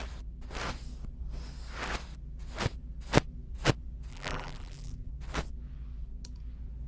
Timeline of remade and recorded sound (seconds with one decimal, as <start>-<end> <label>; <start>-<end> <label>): 0.0-4.1 recorded; 4.1-5.1 remade; 5.1-6.9 recorded